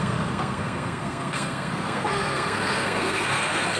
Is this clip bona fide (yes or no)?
no